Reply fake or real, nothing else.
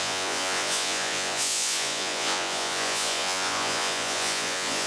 fake